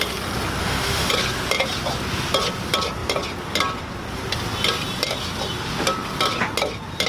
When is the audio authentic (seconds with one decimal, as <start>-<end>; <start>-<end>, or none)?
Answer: 0.0-0.6; 1.1-7.1